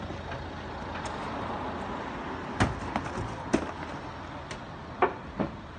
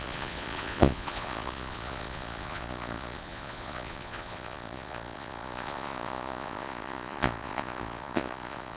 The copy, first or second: second